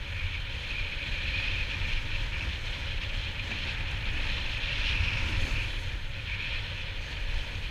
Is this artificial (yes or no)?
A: yes